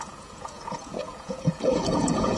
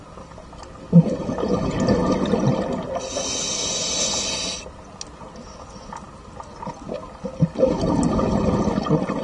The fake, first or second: first